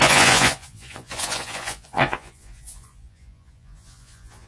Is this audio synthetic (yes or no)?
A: yes